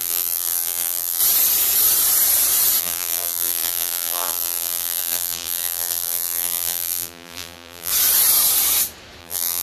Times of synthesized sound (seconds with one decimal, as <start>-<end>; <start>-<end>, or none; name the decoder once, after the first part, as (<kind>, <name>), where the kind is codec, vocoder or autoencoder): 0.0-1.2 (vocoder, BigVGAN v2); 2.8-7.9; 9.2-9.6